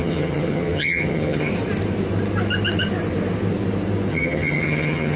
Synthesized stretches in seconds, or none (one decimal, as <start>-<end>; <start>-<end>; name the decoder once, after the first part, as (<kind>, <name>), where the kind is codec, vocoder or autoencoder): 0.0-1.5 (vocoder, HiFi-GAN); 4.1-5.2